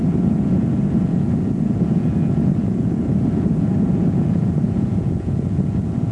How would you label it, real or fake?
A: fake